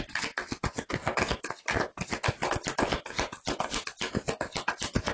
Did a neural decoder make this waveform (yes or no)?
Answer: no